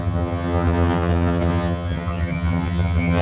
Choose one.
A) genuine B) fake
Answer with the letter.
B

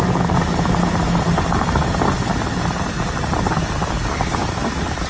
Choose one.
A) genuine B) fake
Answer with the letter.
A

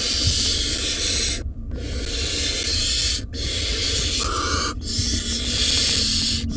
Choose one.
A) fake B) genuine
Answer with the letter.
B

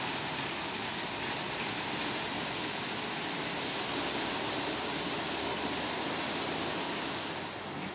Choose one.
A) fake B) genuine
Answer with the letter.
B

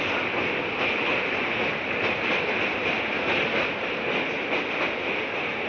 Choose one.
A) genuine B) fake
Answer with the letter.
A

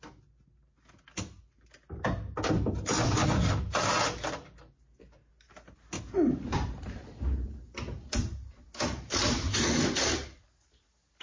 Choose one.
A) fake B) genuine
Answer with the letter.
B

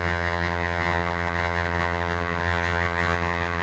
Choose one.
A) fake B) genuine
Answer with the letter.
A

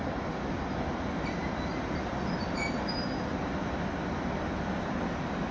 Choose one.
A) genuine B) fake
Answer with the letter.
A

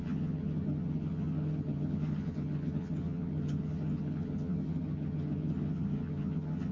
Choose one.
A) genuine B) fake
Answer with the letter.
B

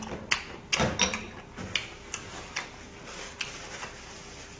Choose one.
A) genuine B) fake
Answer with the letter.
A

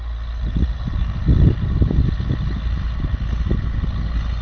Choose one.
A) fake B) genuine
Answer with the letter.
B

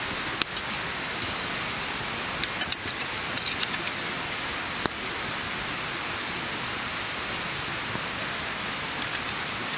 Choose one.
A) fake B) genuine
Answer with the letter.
B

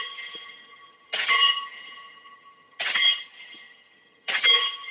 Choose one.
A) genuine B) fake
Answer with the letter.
B